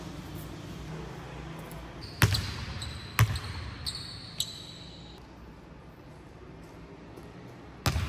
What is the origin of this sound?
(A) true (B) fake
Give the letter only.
A